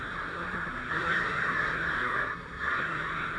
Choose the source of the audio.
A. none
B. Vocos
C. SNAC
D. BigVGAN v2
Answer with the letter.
C